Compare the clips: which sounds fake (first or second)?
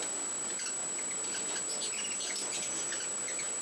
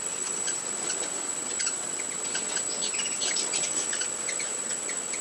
second